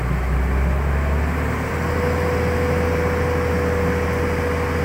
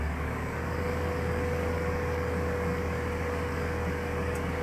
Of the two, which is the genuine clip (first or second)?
first